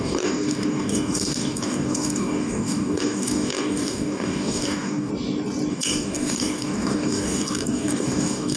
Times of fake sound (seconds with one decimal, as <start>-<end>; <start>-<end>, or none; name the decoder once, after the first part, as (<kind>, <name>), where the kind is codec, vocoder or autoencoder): 0.0-5.1 (codec, DAC); 5.7-8.6